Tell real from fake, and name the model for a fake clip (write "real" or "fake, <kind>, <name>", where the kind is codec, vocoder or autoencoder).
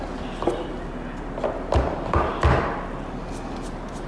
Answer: real